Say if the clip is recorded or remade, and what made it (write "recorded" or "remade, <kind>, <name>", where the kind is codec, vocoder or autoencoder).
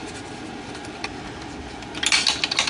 recorded